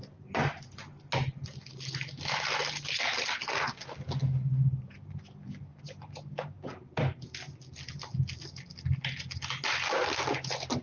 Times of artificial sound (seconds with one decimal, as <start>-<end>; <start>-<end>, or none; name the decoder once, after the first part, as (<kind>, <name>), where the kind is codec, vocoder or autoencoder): none